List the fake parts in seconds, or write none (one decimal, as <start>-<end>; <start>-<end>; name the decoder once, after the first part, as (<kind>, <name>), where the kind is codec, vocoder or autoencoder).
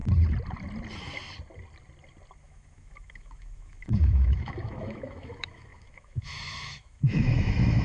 2.4-7.8 (autoencoder, DAC-VAE)